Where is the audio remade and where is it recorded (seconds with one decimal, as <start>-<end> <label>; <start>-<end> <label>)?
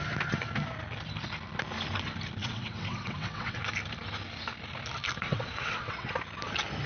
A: 0.0-2.4 recorded; 2.4-3.6 remade; 3.6-5.3 recorded; 5.3-6.1 remade; 6.1-6.9 recorded